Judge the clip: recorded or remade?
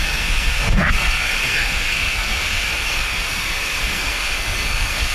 remade